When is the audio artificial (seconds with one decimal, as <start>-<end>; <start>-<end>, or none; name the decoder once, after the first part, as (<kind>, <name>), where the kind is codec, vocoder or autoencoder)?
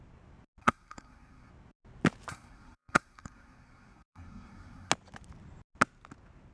0.6-1.5 (codec, SNAC); 2.3-4.9